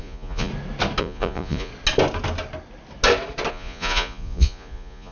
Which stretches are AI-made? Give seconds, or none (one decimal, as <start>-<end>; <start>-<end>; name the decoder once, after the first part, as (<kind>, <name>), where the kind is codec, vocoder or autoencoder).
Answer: 0.0-0.5 (vocoder, Vocos); 1.0-1.7; 3.5-5.1